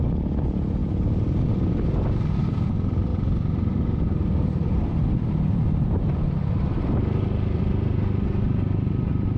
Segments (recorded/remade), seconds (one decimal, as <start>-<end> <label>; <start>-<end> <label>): 0.0-0.8 recorded; 0.8-2.7 remade; 2.7-3.1 recorded; 3.1-6.8 remade; 6.8-9.4 recorded